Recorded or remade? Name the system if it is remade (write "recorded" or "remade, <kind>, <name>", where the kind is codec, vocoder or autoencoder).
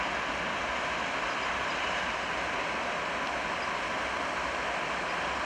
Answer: recorded